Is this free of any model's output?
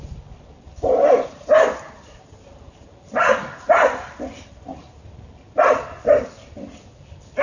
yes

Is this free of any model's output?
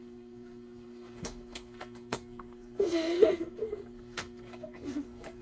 no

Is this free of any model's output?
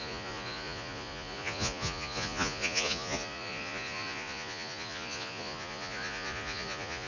no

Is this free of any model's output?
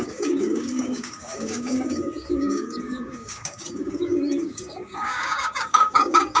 no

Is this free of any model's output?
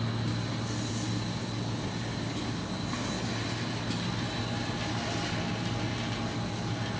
yes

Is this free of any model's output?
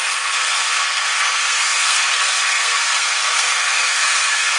no